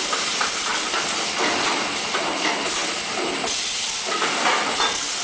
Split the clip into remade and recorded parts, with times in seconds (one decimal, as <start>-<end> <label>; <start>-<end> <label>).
0.0-5.2 recorded